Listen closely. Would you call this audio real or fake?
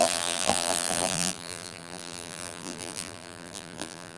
fake